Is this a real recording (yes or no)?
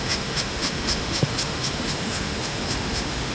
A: no